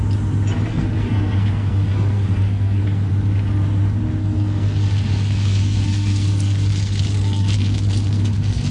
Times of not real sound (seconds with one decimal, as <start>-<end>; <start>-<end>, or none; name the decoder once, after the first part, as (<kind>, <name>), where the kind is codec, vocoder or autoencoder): 0.7-3.1 (codec, SNAC); 4.2-8.7